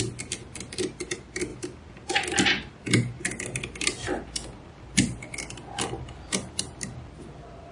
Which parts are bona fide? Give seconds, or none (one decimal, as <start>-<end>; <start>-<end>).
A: 0.0-5.1; 6.9-7.7